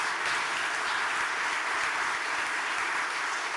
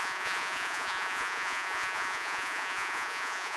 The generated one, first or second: second